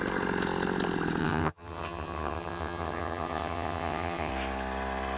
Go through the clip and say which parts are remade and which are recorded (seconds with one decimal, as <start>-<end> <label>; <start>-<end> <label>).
0.0-1.2 recorded; 1.2-4.3 remade; 4.3-5.2 recorded